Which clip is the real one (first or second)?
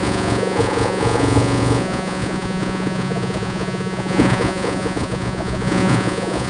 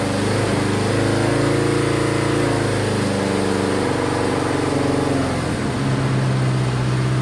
second